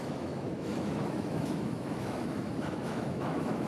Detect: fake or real fake